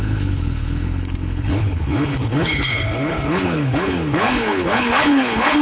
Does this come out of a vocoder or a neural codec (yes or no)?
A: yes